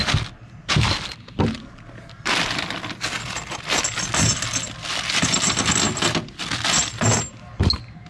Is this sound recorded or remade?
recorded